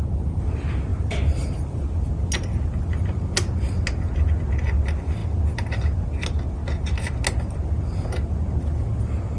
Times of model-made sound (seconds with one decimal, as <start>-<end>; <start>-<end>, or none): none